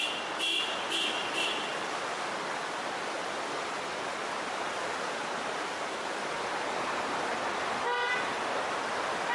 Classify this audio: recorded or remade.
recorded